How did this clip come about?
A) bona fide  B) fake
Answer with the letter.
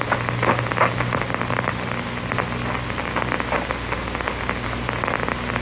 A